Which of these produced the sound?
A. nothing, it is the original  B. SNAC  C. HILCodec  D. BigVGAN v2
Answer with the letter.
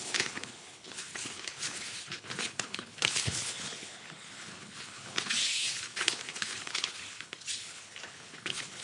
C